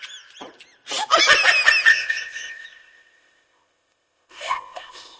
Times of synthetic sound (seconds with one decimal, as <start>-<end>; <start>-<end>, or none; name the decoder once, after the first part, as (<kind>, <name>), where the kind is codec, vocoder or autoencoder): 1.9-5.2 (codec, ZipCodec)